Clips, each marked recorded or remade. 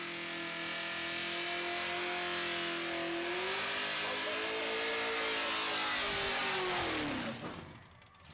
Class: recorded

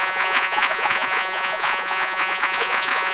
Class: remade